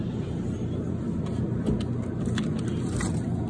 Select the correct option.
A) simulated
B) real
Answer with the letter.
B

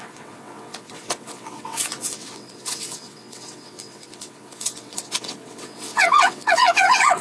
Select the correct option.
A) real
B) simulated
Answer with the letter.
B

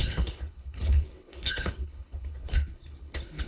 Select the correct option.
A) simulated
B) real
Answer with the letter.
A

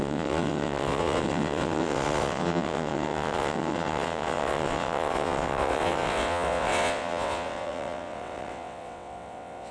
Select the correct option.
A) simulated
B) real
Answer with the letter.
A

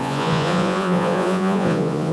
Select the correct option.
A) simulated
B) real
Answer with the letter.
A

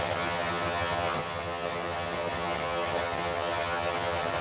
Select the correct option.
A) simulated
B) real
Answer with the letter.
A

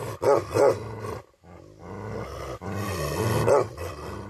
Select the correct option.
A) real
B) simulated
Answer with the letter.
A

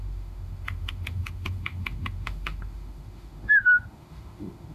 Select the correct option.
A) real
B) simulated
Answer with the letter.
B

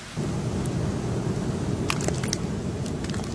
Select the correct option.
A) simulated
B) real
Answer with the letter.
B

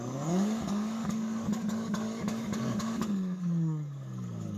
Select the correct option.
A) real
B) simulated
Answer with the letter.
B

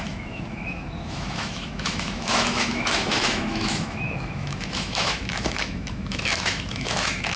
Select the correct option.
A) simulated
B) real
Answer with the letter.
A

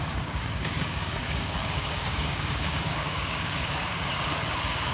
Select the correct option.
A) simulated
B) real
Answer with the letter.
A